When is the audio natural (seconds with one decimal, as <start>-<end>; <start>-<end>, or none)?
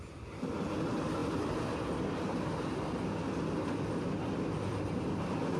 0.0-5.6